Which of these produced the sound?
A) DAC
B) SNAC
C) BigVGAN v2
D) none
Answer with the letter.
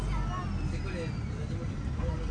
D